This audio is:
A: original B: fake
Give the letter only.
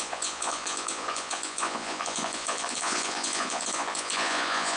B